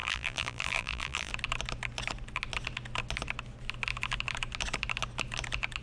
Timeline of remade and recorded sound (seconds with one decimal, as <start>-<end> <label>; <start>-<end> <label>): 0.0-1.3 remade; 1.3-5.8 recorded